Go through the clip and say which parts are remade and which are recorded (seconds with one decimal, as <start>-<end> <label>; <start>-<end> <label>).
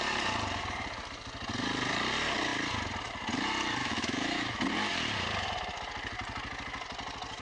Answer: 0.0-3.8 recorded; 3.8-4.6 remade; 4.6-7.4 recorded